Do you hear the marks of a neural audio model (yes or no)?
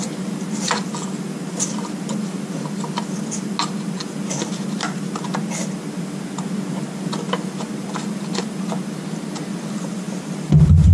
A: no